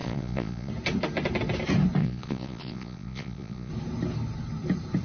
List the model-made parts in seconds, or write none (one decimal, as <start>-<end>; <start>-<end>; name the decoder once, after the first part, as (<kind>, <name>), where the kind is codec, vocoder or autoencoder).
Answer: 0.0-0.7 (vocoder, Vocos); 2.0-3.7